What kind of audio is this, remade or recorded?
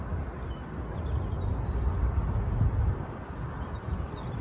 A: recorded